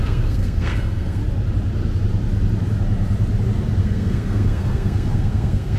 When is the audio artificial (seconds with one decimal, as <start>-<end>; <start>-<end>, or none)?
0.0-1.2; 3.8-5.8